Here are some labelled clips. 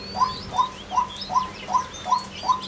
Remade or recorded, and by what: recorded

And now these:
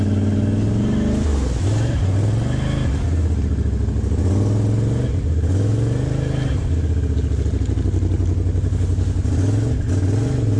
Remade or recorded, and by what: recorded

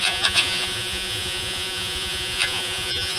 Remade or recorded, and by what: remade, vocoder, Vocos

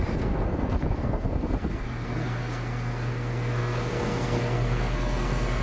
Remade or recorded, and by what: remade, codec, SNAC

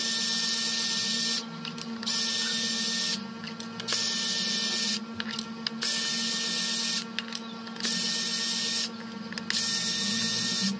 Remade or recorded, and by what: recorded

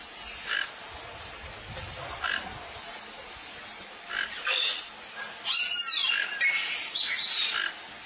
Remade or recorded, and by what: recorded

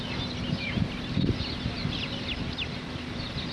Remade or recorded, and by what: recorded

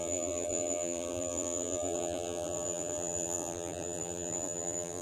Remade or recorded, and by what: remade, vocoder, BigVGAN v2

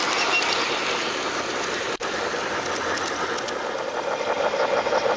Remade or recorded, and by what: recorded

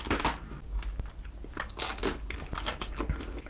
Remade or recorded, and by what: recorded